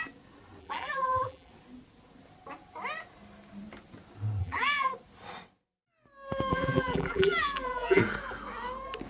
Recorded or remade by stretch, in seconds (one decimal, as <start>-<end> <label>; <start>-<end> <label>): 0.0-0.6 recorded; 0.6-1.5 remade; 1.5-4.4 recorded; 4.4-4.9 remade; 4.9-6.5 recorded; 6.5-8.0 remade; 8.0-9.1 recorded